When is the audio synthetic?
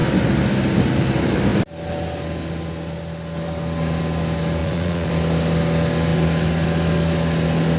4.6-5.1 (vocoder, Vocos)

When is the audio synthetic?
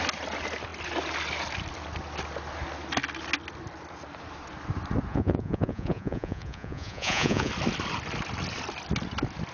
5.1-7.5 (vocoder, Vocos)